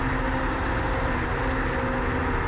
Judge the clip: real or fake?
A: real